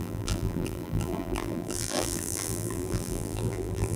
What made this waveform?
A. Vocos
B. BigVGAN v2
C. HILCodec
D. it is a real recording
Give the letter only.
B